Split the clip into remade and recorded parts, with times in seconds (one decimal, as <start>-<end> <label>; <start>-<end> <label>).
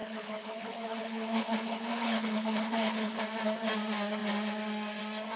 0.0-3.2 remade; 3.2-5.4 recorded